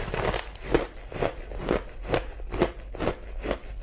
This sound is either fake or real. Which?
real